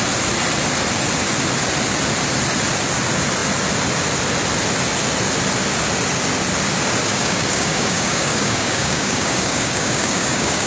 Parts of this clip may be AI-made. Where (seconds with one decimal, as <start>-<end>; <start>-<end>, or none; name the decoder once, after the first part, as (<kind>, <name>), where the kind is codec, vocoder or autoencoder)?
7.1-10.7 (codec, DAC)

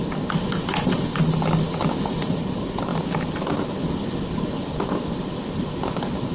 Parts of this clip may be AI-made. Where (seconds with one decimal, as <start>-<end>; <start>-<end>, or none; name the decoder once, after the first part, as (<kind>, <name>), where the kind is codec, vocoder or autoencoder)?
none

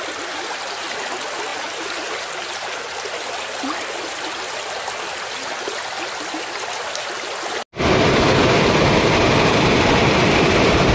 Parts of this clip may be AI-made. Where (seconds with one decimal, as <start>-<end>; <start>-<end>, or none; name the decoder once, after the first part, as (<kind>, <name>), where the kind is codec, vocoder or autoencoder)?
none

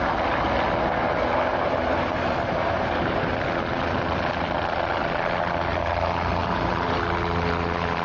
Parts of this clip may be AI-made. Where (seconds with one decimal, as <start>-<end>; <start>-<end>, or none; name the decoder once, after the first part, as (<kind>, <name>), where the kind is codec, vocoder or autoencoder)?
1.5-3.3 (vocoder, BigVGAN v2); 6.4-7.0

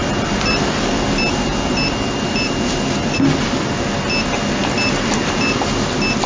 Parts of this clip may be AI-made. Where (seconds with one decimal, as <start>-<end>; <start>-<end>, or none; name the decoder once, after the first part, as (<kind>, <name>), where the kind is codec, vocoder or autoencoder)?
none

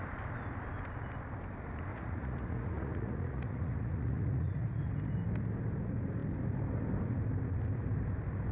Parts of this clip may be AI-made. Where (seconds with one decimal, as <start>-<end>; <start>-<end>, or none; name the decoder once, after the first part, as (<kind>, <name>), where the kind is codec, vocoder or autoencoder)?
1.9-4.9 (vocoder, Vocos)

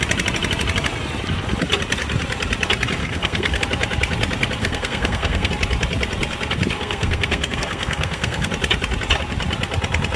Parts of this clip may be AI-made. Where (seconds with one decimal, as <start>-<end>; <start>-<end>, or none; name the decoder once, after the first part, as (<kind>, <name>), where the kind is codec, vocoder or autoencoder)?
3.0-3.6 (codec, SNAC); 4.6-5.5; 6.8-8.5